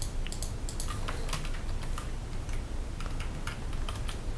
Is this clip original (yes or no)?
yes